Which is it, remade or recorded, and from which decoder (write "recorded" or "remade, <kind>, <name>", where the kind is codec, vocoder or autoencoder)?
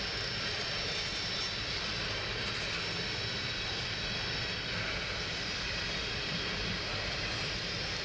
recorded